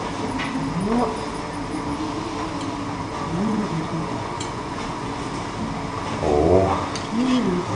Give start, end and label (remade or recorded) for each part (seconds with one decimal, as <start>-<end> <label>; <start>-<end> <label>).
0.0-3.1 recorded; 3.1-5.3 remade; 5.3-7.7 recorded